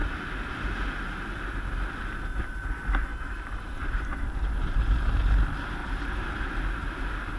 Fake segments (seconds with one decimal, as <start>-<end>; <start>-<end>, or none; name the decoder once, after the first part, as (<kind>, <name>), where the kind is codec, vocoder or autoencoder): 3.1-5.0 (vocoder, BigVGAN v2); 5.8-6.5

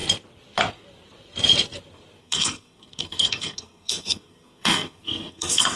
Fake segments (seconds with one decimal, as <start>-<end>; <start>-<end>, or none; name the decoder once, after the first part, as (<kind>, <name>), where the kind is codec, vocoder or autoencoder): 2.2-5.8 (codec, SNAC)

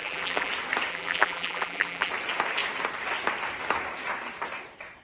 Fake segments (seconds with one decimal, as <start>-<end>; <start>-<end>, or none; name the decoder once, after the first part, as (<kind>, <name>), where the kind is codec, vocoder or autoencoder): 0.0-0.5 (vocoder, BigVGAN v2); 0.9-2.1

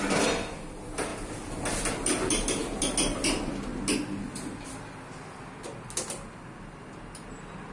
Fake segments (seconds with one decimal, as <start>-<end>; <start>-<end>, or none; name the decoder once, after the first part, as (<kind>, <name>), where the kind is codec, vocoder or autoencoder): none

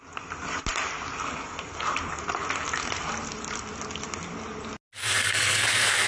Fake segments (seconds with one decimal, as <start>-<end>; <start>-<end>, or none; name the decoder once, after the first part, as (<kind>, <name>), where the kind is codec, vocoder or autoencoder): 5.0-6.1 (codec, SNAC)

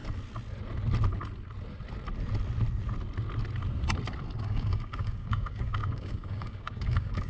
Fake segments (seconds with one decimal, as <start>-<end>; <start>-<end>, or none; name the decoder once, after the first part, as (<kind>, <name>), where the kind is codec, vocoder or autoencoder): 4.4-7.3 (codec, DAC)

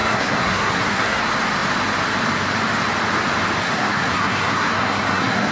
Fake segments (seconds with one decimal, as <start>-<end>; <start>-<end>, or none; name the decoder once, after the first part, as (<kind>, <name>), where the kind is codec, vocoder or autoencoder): 0.0-1.2 (codec, SNAC); 3.6-5.5